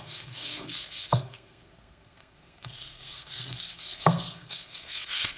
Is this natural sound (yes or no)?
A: no